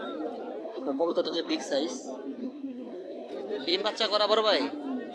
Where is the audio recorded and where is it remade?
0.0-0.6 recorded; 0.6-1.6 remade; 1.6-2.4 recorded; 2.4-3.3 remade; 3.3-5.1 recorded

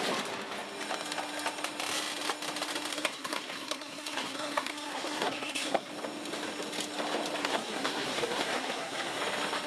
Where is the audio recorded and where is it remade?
0.0-2.9 recorded; 2.9-5.9 remade; 5.9-7.4 recorded; 7.4-9.2 remade; 9.2-9.7 recorded

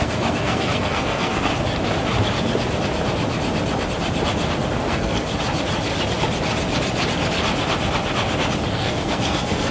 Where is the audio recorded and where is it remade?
0.0-1.5 remade; 1.5-4.8 recorded; 4.8-5.3 remade; 5.3-8.7 recorded; 8.7-9.7 remade

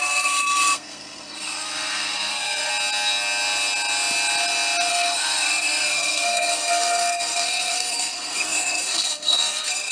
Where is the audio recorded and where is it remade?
0.0-2.7 remade; 2.7-4.9 recorded; 4.9-9.9 remade

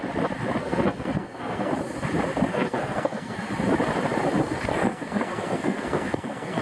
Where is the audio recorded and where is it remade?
0.0-0.6 recorded; 0.6-1.7 remade; 1.7-2.5 recorded; 2.5-3.5 remade; 3.5-4.7 recorded; 4.7-6.6 remade

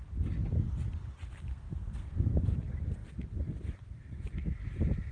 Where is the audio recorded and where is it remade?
0.0-1.5 recorded; 1.5-2.4 remade; 2.4-5.1 recorded